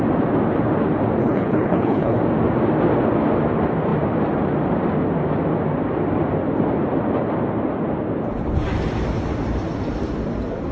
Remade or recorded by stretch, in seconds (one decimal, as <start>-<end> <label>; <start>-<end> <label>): 0.0-1.2 recorded; 1.2-2.2 remade; 2.2-10.7 recorded